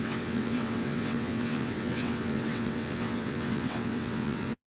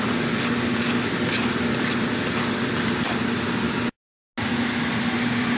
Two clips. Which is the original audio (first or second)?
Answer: second